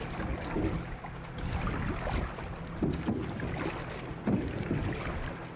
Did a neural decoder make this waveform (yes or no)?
no